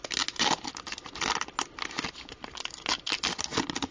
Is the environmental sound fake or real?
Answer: real